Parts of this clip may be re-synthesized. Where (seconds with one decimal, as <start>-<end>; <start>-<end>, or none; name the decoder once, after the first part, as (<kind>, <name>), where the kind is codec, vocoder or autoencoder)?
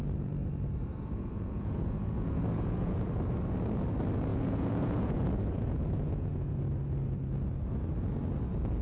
0.9-3.1 (vocoder, Vocos); 4.3-6.5